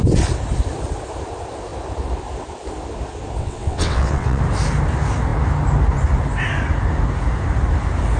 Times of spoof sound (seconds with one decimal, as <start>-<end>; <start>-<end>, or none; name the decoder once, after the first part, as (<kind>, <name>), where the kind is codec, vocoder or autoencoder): 3.4-4.4 (vocoder, WaveNeXt)